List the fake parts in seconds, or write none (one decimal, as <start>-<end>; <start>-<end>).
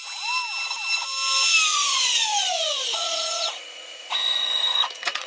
1.7-5.3